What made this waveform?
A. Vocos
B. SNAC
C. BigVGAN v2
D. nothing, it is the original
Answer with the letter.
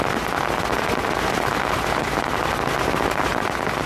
D